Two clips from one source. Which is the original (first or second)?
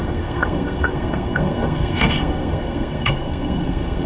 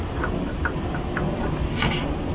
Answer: second